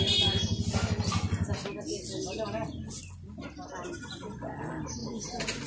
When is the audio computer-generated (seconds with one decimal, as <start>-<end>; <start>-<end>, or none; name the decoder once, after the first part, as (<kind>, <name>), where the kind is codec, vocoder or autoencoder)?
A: none